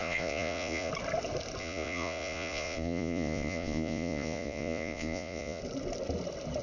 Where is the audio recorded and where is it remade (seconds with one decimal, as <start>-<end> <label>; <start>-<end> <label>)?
0.0-0.9 remade; 0.9-1.6 recorded; 1.6-5.6 remade; 5.6-6.6 recorded